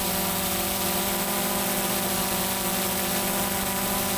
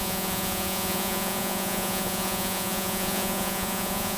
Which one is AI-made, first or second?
second